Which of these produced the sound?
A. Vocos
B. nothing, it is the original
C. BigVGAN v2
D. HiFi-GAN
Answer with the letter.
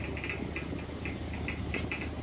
B